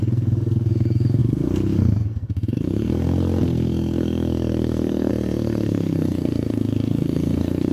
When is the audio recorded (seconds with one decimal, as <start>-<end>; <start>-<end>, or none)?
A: none